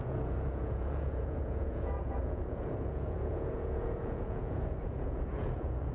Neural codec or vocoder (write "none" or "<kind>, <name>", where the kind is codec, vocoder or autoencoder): vocoder, Vocos